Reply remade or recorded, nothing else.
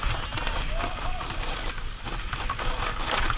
recorded